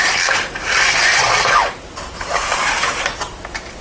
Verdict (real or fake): real